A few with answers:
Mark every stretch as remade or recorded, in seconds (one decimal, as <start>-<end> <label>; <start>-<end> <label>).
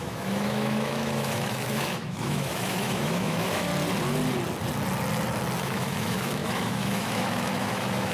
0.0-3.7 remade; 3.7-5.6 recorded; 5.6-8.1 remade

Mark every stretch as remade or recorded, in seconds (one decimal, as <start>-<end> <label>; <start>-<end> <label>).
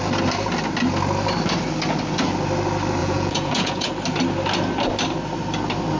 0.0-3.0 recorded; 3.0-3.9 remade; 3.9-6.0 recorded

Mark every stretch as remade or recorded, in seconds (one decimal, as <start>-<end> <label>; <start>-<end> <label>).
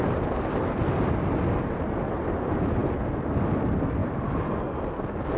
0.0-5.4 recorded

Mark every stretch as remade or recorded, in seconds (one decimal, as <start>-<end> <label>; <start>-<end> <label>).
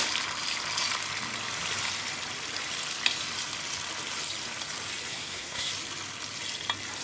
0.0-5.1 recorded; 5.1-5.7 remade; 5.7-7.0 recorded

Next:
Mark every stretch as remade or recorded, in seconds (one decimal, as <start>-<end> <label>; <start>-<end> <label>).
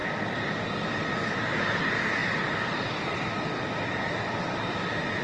0.0-5.2 recorded